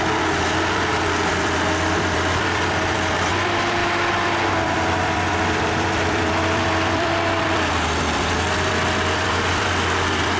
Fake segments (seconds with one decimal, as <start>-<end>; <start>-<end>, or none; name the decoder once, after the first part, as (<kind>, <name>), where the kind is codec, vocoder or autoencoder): 0.0-3.8 (vocoder, BigVGAN v2); 4.5-10.4